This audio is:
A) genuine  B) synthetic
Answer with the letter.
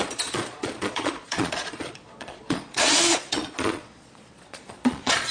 B